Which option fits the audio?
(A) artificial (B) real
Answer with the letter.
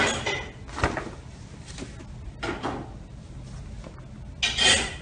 B